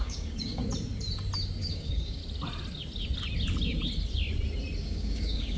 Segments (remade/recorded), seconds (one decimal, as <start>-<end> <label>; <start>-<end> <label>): 0.0-0.6 remade; 0.6-1.6 recorded; 1.6-2.2 remade; 2.2-4.8 recorded; 4.8-5.6 remade